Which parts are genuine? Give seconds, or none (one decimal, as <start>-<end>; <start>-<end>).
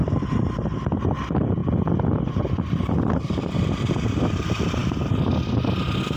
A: 0.0-6.2